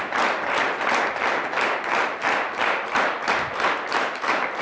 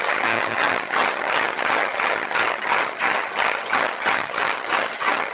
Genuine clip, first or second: first